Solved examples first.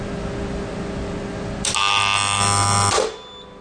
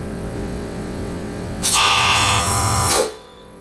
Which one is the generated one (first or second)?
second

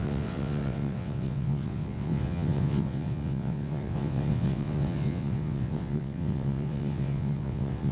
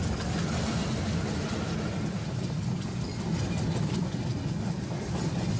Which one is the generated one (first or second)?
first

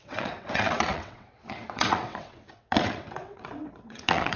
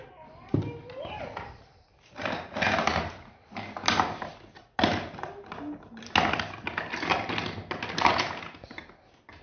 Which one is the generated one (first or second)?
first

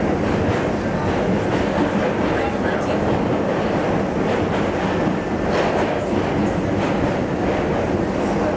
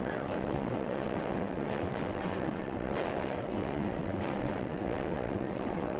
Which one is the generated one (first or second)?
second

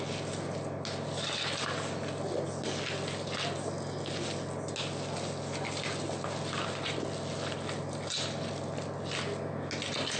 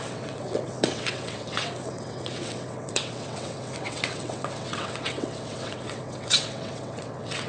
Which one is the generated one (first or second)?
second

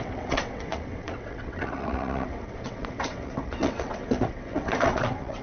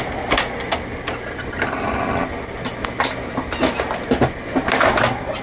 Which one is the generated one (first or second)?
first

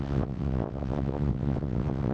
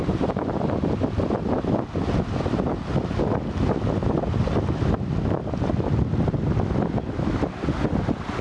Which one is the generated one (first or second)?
first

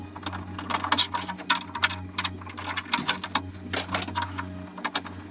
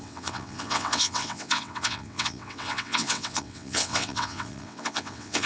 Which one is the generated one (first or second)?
second